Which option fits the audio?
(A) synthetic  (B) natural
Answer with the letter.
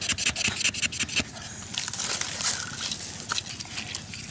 B